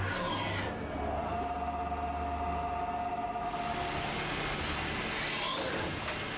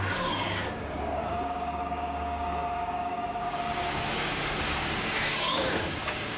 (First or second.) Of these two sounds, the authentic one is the first